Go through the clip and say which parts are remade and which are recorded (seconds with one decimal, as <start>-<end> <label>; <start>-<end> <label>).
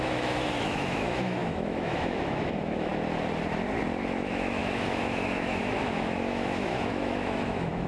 0.0-2.9 remade; 2.9-4.0 recorded; 4.0-7.9 remade